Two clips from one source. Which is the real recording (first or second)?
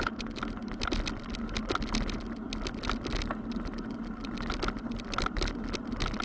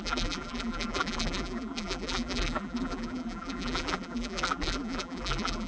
first